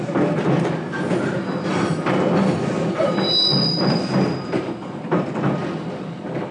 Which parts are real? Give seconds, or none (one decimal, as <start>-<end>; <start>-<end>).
0.0-6.5